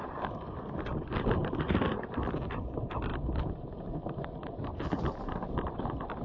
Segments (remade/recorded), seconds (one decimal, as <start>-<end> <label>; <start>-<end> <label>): 0.0-1.4 recorded; 1.4-1.9 remade; 1.9-3.1 recorded; 3.1-5.4 remade; 5.4-6.2 recorded